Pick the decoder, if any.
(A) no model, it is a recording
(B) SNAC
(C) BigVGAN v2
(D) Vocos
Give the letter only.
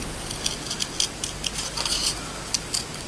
A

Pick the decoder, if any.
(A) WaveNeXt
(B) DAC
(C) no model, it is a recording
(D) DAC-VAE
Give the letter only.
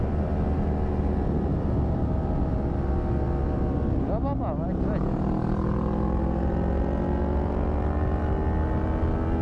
C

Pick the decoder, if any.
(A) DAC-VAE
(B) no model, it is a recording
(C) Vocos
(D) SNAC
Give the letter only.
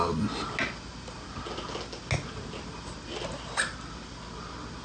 B